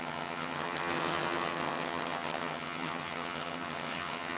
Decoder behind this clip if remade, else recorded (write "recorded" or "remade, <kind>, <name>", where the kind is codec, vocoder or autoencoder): remade, vocoder, HiFi-GAN